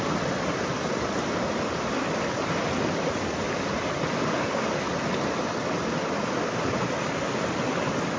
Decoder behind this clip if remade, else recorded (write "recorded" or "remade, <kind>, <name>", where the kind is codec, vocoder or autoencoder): recorded